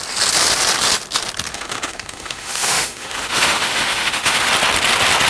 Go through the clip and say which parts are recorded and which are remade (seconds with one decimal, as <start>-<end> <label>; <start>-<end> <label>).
0.0-1.5 recorded; 1.5-4.5 remade; 4.5-5.3 recorded